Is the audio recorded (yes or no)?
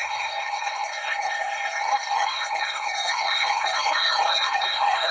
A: no